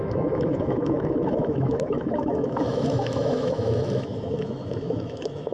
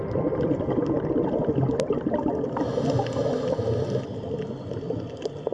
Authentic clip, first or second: second